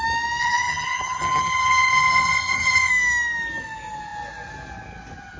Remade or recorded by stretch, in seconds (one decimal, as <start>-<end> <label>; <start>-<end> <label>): 0.0-0.4 recorded; 0.4-2.9 remade; 2.9-5.4 recorded